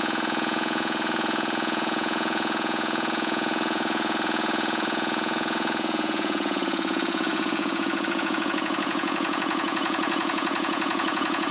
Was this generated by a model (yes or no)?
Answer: yes